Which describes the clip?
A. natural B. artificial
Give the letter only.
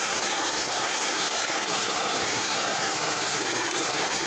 B